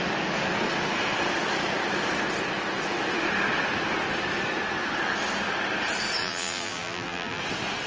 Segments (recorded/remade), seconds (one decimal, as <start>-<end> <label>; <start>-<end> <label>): 0.0-6.2 recorded; 6.2-7.4 remade; 7.4-7.9 recorded